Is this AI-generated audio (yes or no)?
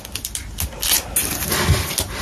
no